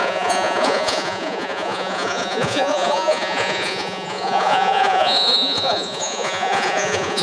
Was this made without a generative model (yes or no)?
no